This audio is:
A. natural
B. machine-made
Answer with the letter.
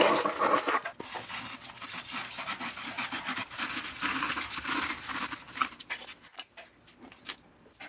A